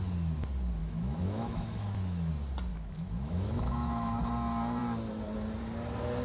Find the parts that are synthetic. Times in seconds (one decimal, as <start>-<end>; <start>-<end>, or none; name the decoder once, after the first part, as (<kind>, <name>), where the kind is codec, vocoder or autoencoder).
0.8-2.3 (autoencoder, DAC-VAE); 2.7-4.2